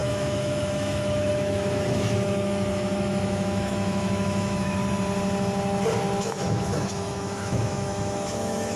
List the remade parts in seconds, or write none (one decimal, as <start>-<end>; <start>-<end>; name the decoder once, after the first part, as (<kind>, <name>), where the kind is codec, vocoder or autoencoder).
0.0-4.8 (autoencoder, DAC-VAE); 6.2-8.8